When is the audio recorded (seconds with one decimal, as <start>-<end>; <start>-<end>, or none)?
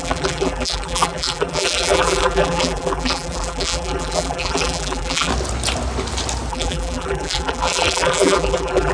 5.3-6.5